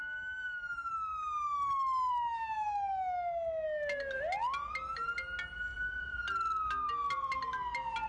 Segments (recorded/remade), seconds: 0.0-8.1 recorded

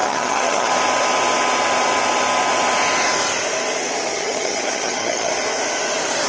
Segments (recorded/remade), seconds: 0.0-0.7 remade; 0.7-4.1 recorded; 4.1-5.3 remade; 5.3-6.3 recorded

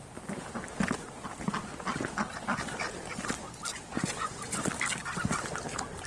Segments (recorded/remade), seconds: 0.0-3.7 recorded; 3.7-4.7 remade; 4.7-6.1 recorded